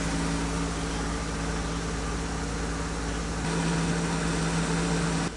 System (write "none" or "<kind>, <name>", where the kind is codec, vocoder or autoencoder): none